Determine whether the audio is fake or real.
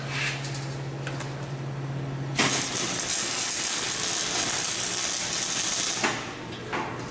real